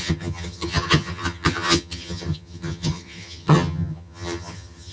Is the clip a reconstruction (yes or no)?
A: yes